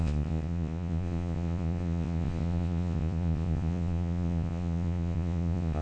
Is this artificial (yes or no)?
yes